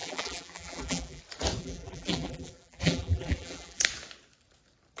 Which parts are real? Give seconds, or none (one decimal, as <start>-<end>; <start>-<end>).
1.2-1.6; 3.8-5.0